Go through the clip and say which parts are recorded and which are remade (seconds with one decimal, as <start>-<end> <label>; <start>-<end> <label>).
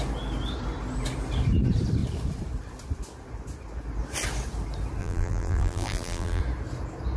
0.0-5.0 recorded; 5.0-6.4 remade; 6.4-7.2 recorded